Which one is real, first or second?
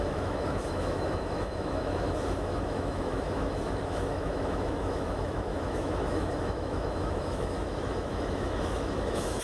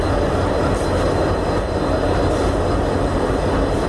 second